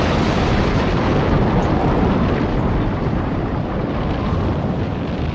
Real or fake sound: fake